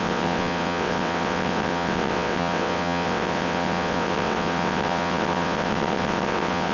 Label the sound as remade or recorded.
remade